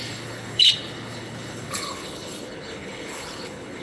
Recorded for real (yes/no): no